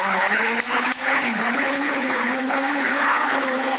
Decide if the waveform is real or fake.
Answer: fake